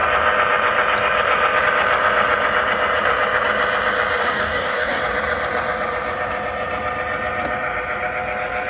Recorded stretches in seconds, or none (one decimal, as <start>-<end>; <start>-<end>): 0.0-4.2; 5.0-8.7